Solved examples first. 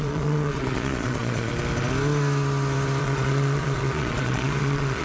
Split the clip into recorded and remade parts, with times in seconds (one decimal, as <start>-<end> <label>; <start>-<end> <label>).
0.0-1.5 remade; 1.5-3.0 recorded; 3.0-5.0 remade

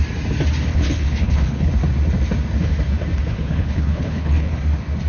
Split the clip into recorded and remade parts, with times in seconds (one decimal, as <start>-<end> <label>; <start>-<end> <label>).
0.0-0.7 recorded; 0.7-1.7 remade; 1.7-3.3 recorded; 3.3-4.6 remade; 4.6-5.1 recorded

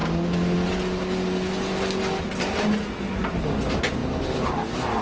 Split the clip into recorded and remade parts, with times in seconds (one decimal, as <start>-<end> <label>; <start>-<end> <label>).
0.0-5.0 recorded

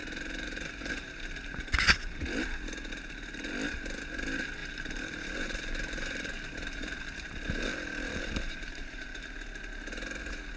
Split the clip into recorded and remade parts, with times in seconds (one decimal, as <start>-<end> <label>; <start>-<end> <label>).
0.0-1.6 remade; 1.6-4.6 recorded; 4.6-9.4 remade; 9.4-10.6 recorded

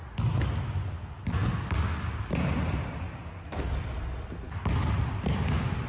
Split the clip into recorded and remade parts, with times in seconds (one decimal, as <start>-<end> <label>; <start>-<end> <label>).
0.0-5.9 recorded

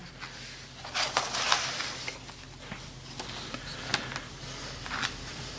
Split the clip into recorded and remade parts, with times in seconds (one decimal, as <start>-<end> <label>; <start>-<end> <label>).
0.0-5.6 recorded

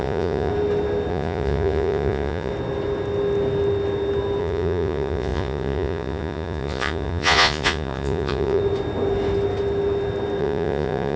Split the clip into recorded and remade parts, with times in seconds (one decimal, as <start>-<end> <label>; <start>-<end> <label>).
0.0-0.5 remade; 0.5-1.1 recorded; 1.1-2.5 remade; 2.5-4.4 recorded; 4.4-8.6 remade; 8.6-10.4 recorded; 10.4-11.2 remade